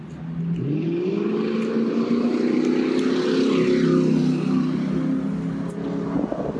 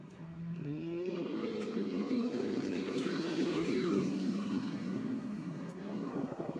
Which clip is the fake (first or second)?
second